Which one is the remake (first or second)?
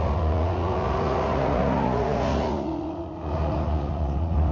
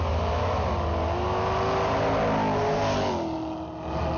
first